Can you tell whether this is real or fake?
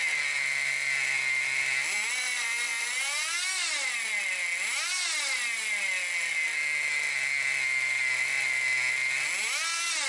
real